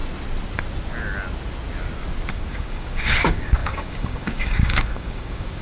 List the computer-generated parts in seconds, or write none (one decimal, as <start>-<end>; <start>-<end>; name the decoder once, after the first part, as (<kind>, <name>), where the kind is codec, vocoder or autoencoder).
2.3-5.6 (codec, DAC)